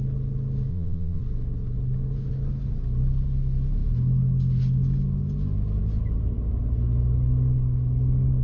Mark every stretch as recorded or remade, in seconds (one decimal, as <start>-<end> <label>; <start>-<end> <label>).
0.0-0.7 recorded; 0.7-1.2 remade; 1.2-8.4 recorded